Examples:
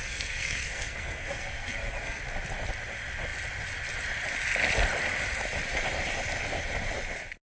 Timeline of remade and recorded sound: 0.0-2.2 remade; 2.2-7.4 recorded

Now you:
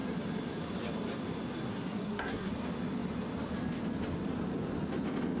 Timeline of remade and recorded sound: 0.0-1.7 recorded; 1.7-2.5 remade; 2.5-5.4 recorded

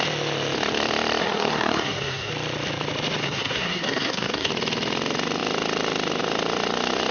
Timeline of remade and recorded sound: 0.0-1.2 recorded; 1.2-2.3 remade; 2.3-3.2 recorded; 3.2-4.5 remade; 4.5-7.1 recorded

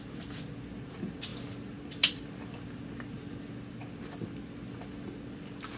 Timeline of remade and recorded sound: 0.0-5.8 recorded

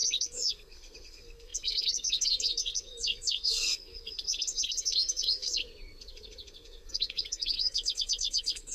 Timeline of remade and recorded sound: 0.0-8.7 remade